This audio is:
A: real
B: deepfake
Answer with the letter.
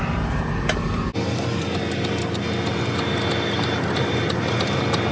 A